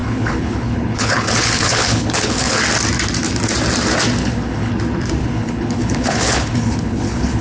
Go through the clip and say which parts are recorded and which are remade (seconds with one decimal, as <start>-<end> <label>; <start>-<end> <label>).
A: 0.0-2.6 remade; 2.6-4.2 recorded; 4.2-4.7 remade; 4.7-5.2 recorded; 5.2-7.4 remade